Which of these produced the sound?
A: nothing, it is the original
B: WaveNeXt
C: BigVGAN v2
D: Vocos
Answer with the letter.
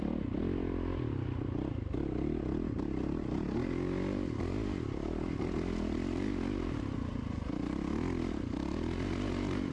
A